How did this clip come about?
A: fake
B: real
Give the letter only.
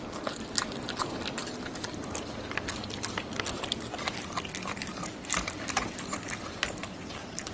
B